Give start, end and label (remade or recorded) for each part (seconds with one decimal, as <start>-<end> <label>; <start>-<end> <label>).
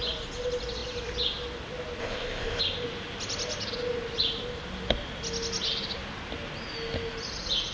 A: 0.0-2.0 recorded; 2.0-2.6 remade; 2.6-7.7 recorded